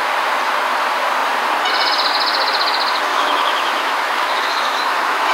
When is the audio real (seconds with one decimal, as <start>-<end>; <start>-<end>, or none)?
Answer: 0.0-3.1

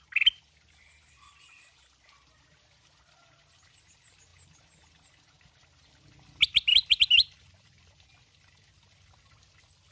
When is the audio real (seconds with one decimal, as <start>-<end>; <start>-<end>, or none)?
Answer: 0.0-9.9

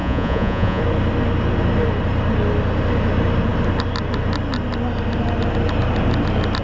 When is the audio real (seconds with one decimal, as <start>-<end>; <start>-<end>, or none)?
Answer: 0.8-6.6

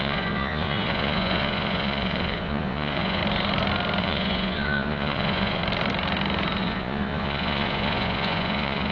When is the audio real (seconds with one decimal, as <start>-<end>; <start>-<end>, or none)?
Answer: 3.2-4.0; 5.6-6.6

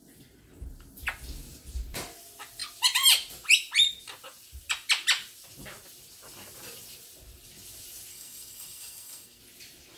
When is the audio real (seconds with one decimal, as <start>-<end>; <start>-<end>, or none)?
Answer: 0.0-8.1; 9.4-10.0

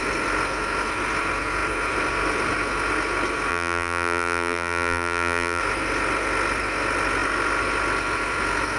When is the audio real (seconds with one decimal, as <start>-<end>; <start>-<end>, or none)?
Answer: 0.0-3.5; 5.6-8.8

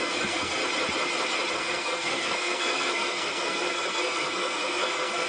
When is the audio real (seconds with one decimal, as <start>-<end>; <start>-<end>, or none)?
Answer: 0.6-1.5

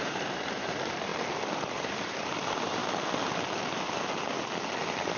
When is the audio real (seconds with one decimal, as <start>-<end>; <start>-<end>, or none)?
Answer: 1.1-1.7; 2.8-5.2